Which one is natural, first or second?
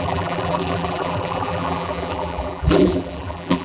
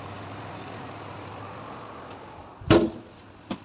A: second